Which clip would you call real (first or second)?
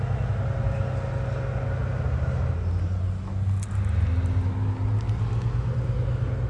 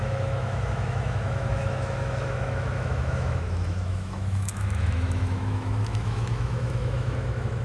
first